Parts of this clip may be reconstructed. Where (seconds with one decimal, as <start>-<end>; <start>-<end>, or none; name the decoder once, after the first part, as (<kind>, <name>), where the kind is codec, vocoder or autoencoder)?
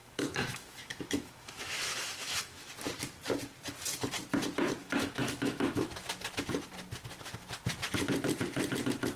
0.0-2.7 (autoencoder, DAC-VAE); 4.8-5.9